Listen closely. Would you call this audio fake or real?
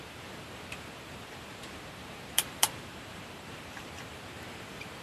fake